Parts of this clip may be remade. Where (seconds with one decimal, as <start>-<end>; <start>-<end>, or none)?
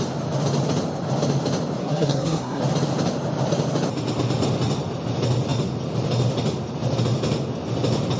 1.8-2.6